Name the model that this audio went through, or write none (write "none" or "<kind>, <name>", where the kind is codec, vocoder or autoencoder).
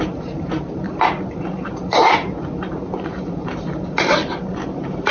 vocoder, BigVGAN v2